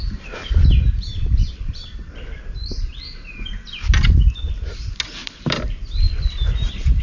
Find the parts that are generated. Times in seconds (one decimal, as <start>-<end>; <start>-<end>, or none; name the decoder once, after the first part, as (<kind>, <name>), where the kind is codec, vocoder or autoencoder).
1.4-3.0 (vocoder, BigVGAN v2); 5.2-7.0